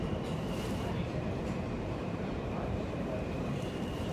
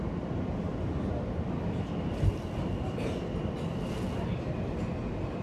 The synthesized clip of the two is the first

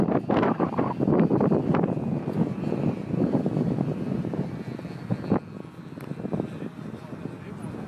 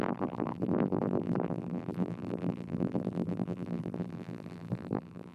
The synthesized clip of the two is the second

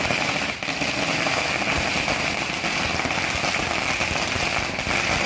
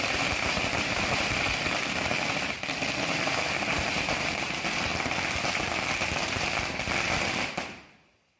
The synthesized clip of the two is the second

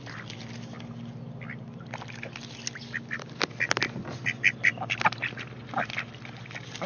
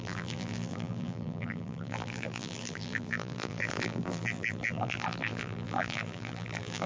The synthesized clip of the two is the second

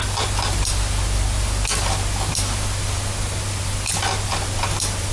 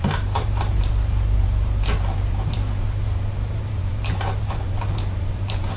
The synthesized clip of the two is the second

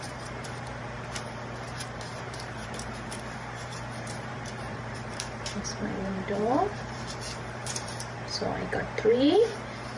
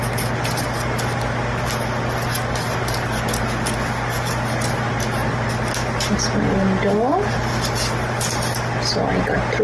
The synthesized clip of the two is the first